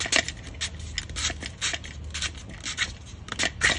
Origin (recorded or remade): recorded